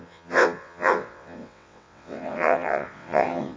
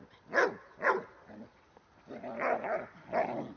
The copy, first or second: first